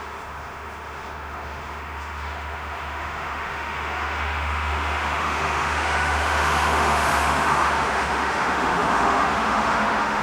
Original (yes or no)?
no